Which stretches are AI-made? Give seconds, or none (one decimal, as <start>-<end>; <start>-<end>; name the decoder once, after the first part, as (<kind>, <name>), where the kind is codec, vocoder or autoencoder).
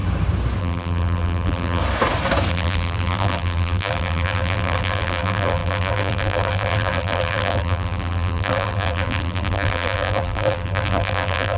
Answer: 0.6-1.8 (vocoder, BigVGAN v2); 2.5-11.6